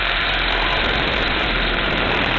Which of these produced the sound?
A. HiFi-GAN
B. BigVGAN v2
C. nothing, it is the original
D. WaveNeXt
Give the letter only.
B